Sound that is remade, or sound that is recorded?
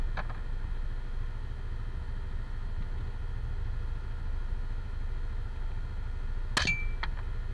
recorded